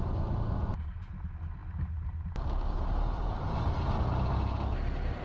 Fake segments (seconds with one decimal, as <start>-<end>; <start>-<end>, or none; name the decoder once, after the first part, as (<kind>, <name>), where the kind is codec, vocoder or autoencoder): none